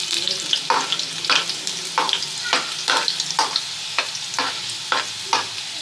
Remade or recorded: recorded